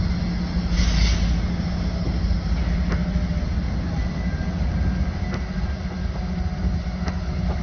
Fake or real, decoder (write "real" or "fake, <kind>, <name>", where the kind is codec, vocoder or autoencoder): real